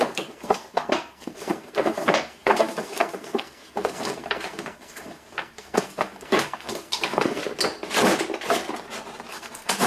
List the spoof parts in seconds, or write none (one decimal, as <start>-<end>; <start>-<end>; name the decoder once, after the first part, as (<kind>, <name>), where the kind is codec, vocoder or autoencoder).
0.0-7.4 (codec, SNAC); 9.3-9.9